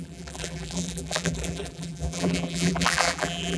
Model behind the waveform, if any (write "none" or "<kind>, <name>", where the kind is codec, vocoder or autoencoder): vocoder, BigVGAN v2